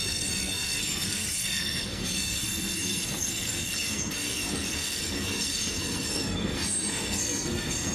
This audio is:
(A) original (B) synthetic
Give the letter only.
B